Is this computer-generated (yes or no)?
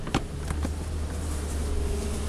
no